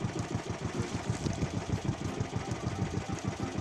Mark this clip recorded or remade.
recorded